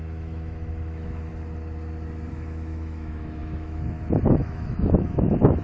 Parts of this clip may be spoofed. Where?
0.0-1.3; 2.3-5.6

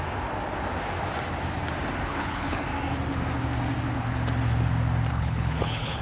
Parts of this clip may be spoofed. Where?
2.1-2.6; 5.1-6.0